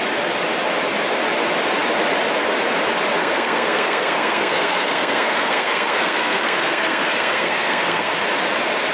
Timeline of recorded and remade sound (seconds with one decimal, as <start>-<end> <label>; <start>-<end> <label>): 0.0-3.2 recorded; 3.2-8.1 remade; 8.1-8.9 recorded